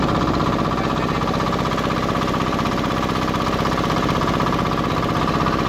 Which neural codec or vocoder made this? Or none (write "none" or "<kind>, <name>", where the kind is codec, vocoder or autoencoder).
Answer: none